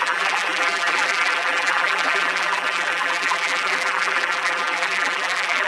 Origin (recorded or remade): remade